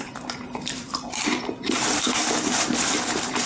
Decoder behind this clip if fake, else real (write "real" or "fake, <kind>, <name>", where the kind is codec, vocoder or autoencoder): fake, vocoder, BigVGAN v2